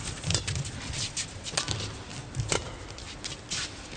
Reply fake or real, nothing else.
real